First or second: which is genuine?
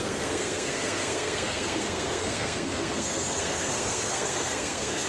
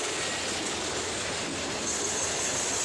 second